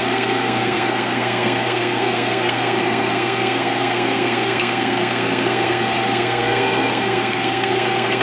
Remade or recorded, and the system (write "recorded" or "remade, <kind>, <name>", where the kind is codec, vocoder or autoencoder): remade, codec, SNAC